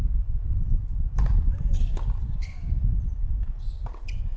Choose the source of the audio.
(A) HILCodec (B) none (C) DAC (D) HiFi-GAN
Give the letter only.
B